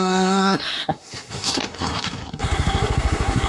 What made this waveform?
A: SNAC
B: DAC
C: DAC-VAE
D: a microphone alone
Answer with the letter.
A